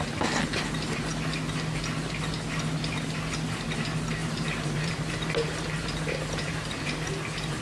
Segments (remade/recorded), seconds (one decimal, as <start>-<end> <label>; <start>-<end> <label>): 0.0-4.2 recorded; 4.2-7.1 remade; 7.1-7.6 recorded